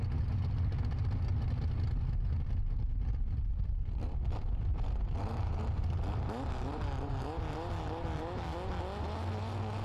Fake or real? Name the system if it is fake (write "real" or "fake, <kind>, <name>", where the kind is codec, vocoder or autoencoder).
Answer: real